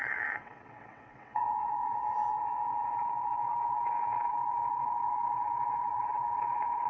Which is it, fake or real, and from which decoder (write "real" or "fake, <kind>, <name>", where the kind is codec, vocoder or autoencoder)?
fake, vocoder, WaveNeXt